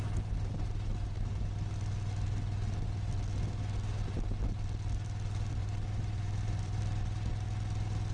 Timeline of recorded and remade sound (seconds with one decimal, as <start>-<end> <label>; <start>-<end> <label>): 0.0-5.6 recorded; 5.6-6.8 remade; 6.8-8.1 recorded